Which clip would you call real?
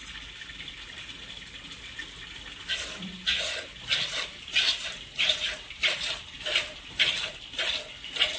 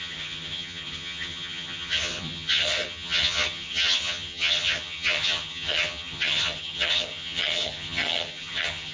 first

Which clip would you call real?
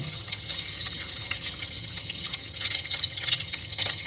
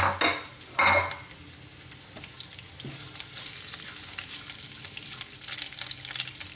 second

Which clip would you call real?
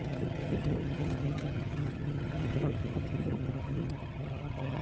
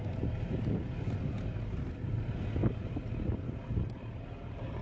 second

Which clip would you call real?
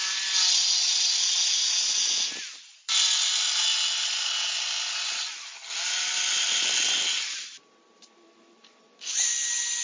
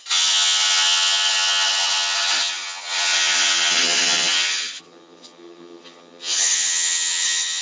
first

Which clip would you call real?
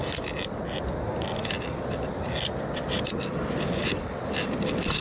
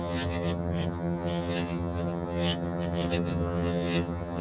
first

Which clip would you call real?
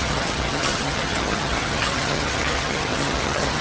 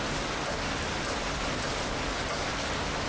second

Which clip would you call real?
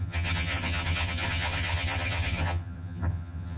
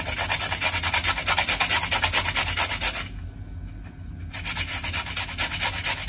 second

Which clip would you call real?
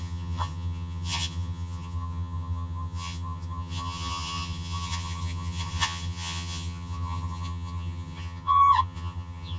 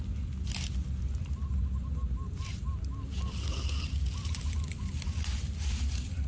second